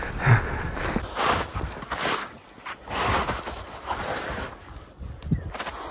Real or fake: real